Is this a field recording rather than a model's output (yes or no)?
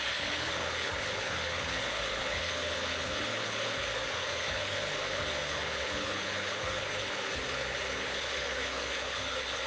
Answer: no